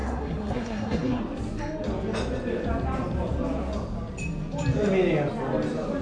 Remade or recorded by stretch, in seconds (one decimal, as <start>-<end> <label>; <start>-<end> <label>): 0.0-1.2 remade; 1.2-6.0 recorded

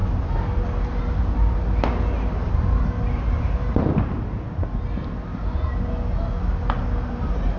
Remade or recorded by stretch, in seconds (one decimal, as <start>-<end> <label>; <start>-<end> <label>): 0.0-7.6 recorded